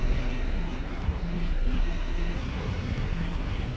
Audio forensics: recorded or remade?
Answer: remade